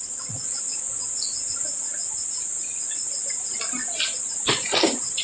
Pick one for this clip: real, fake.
real